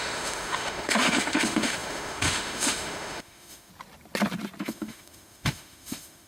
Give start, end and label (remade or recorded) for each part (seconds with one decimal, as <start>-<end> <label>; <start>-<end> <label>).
0.0-3.7 remade; 3.7-4.6 recorded; 4.6-6.3 remade